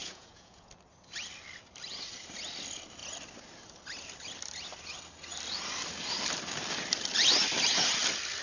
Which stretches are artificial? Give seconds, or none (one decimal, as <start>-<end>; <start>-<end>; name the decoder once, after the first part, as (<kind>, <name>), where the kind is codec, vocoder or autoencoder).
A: 0.0-0.7 (vocoder, Vocos)

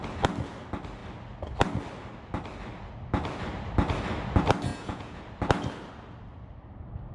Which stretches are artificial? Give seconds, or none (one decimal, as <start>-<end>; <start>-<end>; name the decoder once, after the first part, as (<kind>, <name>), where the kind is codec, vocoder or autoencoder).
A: 4.7-5.2 (vocoder, Vocos)

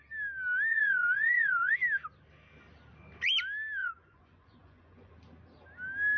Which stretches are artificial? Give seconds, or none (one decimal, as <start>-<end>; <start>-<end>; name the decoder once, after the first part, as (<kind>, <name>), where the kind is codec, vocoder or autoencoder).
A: 0.7-1.7 (vocoder, Vocos); 3.8-5.1

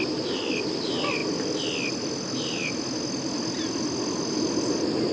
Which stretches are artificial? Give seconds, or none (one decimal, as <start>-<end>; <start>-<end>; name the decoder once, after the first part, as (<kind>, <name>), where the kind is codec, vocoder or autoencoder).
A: none

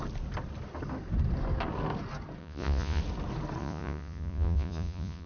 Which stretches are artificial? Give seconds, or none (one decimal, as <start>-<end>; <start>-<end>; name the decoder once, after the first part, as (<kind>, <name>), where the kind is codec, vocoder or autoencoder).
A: 2.4-3.0 (vocoder, Vocos); 3.6-5.3